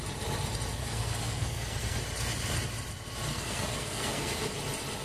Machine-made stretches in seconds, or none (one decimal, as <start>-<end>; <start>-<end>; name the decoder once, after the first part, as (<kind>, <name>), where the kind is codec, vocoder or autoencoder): 0.8-2.0 (codec, SNAC); 3.3-4.5